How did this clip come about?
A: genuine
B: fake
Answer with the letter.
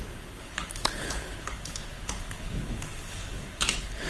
B